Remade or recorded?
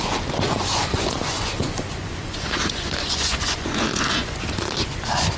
remade